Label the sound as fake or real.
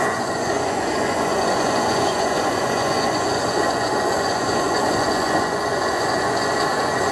fake